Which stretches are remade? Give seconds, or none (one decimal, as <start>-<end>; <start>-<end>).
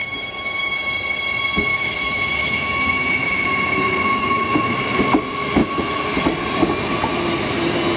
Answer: 0.0-0.7; 1.7-4.7; 5.6-6.2